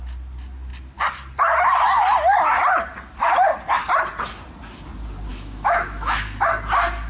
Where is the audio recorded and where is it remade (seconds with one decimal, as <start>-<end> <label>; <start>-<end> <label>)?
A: 0.0-5.3 recorded; 5.3-6.5 remade; 6.5-7.1 recorded